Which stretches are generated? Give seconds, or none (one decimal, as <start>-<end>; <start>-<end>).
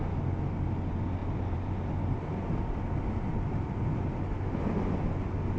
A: 1.2-2.9